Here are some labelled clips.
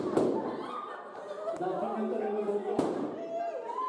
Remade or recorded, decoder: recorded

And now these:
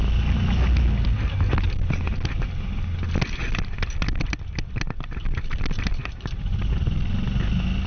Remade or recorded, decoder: recorded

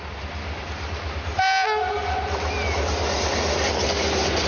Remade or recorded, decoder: recorded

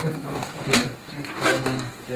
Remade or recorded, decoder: remade, codec, DAC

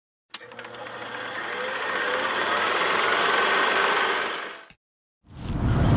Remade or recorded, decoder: recorded